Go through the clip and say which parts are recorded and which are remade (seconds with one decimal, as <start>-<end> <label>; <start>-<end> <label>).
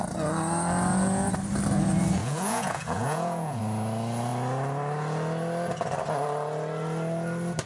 0.0-2.2 recorded; 2.2-3.6 remade; 3.6-7.7 recorded